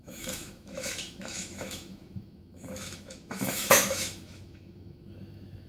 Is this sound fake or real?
fake